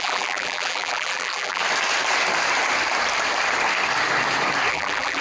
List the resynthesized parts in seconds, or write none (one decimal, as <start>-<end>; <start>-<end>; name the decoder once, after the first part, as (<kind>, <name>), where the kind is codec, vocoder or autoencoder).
0.0-1.6 (vocoder, BigVGAN v2); 4.7-5.2